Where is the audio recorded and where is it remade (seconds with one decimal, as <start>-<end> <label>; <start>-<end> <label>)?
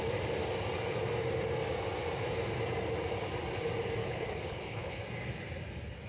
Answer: 0.0-4.0 recorded; 4.0-5.0 remade; 5.0-6.1 recorded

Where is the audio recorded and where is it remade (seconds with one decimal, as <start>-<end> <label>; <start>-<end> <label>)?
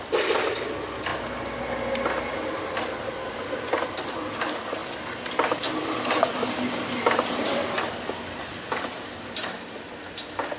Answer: 0.0-10.6 recorded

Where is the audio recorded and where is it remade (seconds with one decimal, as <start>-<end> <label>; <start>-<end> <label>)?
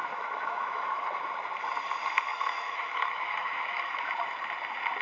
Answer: 0.0-1.3 remade; 1.3-2.3 recorded; 2.3-4.1 remade; 4.1-5.0 recorded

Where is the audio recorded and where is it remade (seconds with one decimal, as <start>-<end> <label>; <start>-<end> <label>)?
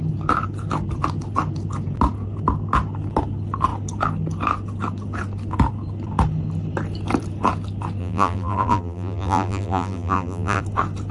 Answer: 0.0-8.0 recorded; 8.0-10.6 remade; 10.6-11.1 recorded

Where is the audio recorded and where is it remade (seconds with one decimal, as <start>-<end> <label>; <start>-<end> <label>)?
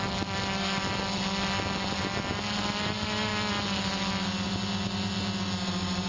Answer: 0.0-6.1 recorded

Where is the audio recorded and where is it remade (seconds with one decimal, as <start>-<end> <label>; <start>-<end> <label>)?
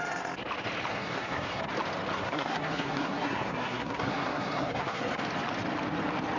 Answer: 0.0-0.9 recorded; 0.9-1.6 remade; 1.6-2.1 recorded; 2.1-5.1 remade; 5.1-6.4 recorded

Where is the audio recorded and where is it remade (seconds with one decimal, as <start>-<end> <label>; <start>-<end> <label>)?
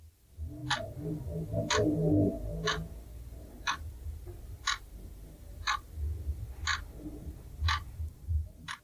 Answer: 0.0-6.7 recorded; 6.7-8.8 remade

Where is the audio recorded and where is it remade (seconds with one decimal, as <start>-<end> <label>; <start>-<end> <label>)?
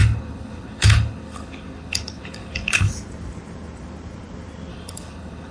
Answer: 0.0-2.9 remade; 2.9-4.7 recorded; 4.7-5.5 remade